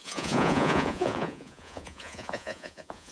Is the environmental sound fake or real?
fake